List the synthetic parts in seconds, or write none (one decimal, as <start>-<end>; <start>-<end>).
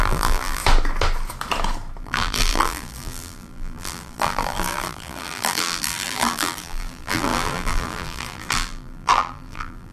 0.0-0.6; 2.0-9.9